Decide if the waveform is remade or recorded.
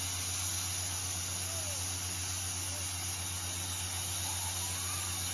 recorded